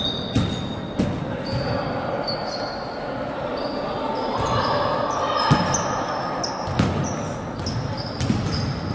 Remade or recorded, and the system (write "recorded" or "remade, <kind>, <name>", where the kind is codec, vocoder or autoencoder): recorded